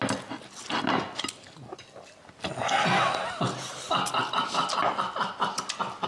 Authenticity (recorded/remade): recorded